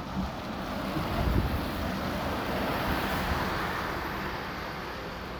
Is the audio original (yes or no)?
yes